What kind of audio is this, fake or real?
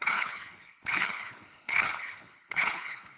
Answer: fake